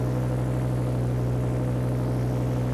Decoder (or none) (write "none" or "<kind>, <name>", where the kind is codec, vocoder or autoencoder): none